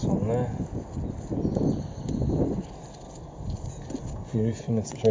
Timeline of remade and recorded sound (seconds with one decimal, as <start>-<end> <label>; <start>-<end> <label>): 0.0-4.2 recorded; 4.2-5.1 remade